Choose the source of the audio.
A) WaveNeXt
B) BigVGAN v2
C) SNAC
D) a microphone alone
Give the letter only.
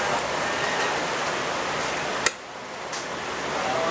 D